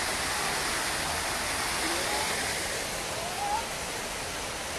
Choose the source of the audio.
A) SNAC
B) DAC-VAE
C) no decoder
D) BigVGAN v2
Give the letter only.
C